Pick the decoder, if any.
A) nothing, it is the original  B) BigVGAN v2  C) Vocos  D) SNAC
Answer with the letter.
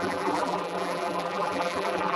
B